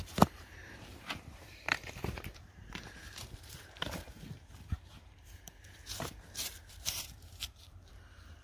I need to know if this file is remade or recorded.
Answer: remade